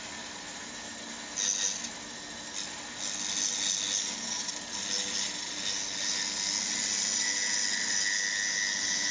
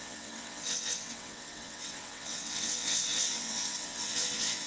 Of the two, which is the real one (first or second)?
first